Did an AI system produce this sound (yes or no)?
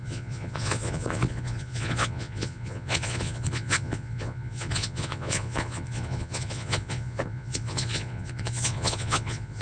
yes